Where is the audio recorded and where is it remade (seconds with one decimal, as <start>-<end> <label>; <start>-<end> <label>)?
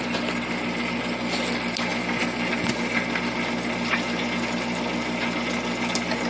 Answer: 0.0-6.3 recorded